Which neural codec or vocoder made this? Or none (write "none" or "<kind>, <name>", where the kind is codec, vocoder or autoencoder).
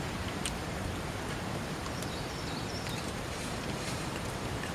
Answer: vocoder, BigVGAN v2